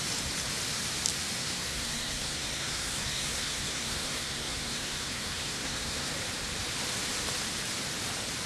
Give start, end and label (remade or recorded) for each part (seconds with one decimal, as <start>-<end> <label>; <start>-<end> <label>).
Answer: 0.0-1.4 recorded; 1.4-6.1 remade; 6.1-8.5 recorded